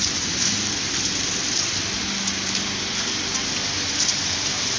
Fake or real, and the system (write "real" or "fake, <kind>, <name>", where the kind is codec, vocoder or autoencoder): real